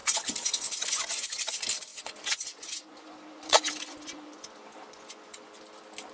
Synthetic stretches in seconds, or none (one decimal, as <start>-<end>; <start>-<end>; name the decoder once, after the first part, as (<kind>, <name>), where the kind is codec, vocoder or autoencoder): 0.0-1.5 (vocoder, Vocos); 1.9-5.6